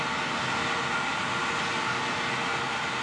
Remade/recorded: recorded